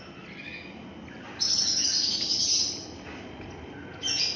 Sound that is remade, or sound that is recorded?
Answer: recorded